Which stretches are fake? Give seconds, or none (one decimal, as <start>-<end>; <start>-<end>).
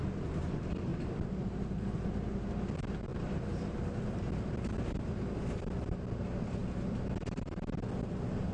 0.9-2.0; 3.1-3.8